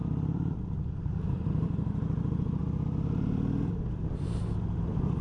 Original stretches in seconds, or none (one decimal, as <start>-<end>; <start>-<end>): 2.6-3.7